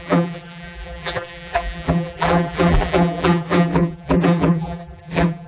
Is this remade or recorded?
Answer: remade